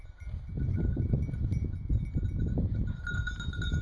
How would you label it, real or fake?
real